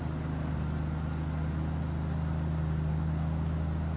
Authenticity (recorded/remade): recorded